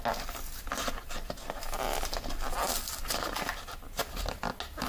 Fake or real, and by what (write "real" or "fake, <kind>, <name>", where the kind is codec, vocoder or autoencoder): real